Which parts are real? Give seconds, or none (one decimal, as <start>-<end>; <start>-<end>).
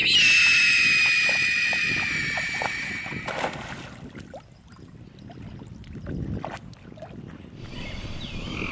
0.0-8.7